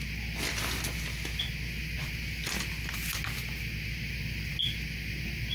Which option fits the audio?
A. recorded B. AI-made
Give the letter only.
A